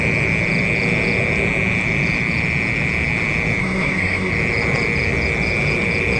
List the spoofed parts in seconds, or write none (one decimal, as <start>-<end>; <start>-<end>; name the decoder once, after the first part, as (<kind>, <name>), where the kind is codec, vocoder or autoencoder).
3.6-4.3 (codec, SNAC)